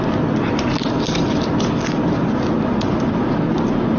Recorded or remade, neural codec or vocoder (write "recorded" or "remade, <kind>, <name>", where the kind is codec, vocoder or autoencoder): recorded